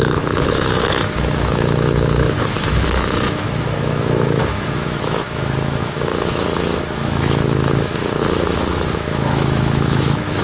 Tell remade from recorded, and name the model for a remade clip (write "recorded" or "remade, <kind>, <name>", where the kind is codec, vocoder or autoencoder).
remade, autoencoder, DAC-VAE